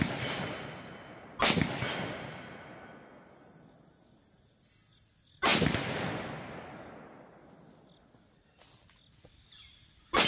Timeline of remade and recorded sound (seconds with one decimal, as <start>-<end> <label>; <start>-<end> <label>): 0.0-10.3 recorded